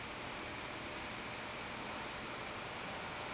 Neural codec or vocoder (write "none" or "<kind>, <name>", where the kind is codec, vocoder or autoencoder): none